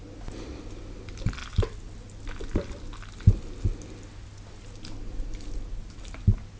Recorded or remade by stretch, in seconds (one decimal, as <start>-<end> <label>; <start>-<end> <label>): 0.0-6.6 recorded